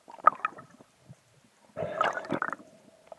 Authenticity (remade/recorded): recorded